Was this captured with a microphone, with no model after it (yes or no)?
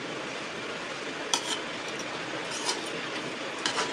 yes